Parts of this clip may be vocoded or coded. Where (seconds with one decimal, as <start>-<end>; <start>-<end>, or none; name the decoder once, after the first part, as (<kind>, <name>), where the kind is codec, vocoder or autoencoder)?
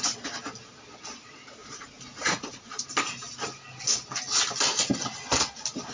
1.6-2.8 (vocoder, Vocos)